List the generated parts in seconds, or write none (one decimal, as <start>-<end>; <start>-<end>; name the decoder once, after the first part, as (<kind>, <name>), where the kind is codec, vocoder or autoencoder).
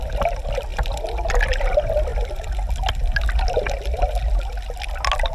0.7-1.5 (vocoder, BigVGAN v2)